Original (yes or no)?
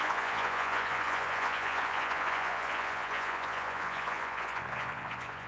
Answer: no